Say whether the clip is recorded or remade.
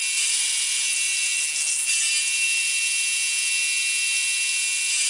recorded